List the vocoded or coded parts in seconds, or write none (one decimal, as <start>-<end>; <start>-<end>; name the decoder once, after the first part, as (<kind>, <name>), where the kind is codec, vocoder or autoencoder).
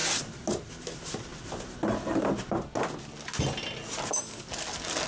none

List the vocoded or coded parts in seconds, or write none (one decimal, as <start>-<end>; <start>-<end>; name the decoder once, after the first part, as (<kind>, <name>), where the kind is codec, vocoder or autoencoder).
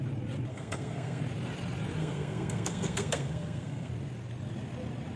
0.5-1.2 (codec, SNAC); 2.0-3.9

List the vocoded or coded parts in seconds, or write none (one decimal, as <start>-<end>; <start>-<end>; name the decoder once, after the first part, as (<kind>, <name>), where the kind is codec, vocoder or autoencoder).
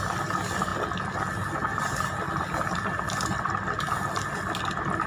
none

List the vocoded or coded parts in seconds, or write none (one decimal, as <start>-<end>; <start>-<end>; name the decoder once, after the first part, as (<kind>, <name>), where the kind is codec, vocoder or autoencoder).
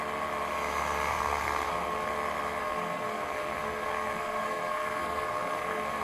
1.1-2.1 (codec, SNAC); 2.6-6.0